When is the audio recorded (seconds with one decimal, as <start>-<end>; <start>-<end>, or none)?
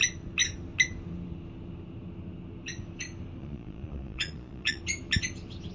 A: 0.0-3.4; 4.8-5.7